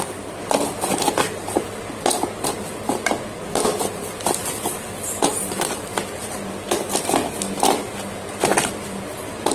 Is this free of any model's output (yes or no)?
no